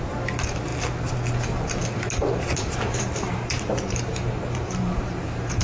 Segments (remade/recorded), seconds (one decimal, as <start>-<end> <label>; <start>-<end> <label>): 0.0-0.7 remade; 0.7-2.4 recorded; 2.4-5.6 remade